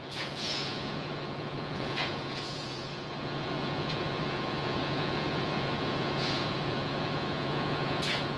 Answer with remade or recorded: remade